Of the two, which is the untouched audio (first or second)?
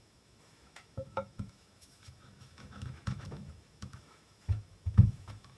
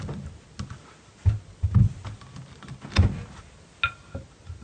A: second